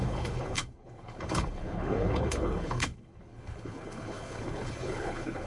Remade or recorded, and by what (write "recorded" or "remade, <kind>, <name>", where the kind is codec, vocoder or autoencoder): remade, codec, HILCodec